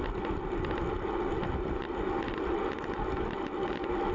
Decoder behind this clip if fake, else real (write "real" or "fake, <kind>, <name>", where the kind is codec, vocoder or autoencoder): real